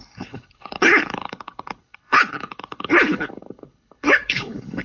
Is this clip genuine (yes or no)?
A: no